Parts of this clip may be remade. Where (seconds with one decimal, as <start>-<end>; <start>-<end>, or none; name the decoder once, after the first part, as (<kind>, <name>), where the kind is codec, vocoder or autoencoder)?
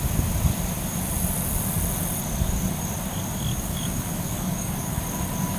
3.5-5.0 (codec, DAC)